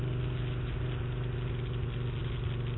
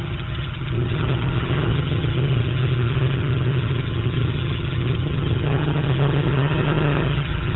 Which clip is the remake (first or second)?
second